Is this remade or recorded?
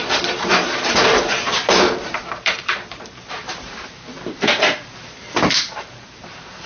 remade